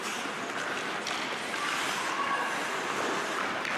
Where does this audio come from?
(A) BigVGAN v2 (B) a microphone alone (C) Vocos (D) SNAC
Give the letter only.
B